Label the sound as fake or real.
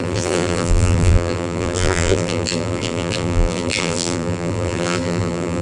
fake